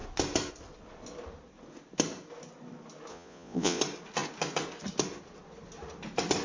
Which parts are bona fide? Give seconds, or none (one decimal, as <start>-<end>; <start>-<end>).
0.0-3.1; 3.8-6.4

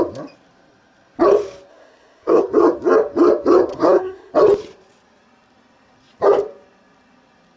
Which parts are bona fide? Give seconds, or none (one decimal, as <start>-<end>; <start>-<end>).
0.0-1.7; 2.4-3.7; 4.3-7.6

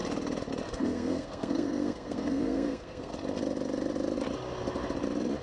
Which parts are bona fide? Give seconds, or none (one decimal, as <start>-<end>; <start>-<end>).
0.0-0.7; 3.1-5.4

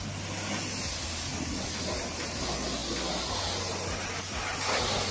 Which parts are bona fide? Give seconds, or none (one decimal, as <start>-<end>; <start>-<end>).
0.0-5.1

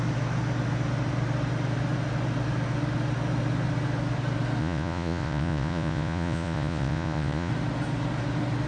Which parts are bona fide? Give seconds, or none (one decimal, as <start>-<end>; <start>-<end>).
0.0-4.6; 7.5-8.7

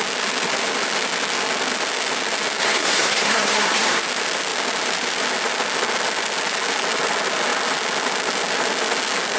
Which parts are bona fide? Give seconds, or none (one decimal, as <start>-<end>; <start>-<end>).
0.0-2.6; 4.0-9.4

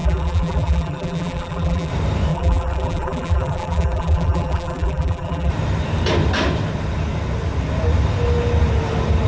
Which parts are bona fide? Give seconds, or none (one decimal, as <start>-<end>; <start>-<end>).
1.9-2.3; 5.5-9.3

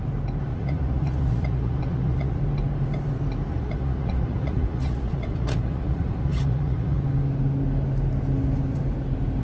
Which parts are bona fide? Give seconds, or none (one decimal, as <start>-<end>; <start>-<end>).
0.0-0.5; 2.4-3.5; 7.0-9.4